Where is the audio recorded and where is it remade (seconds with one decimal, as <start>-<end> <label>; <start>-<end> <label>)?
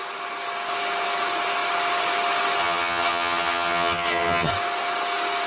0.0-2.6 recorded; 2.6-4.5 remade; 4.5-5.5 recorded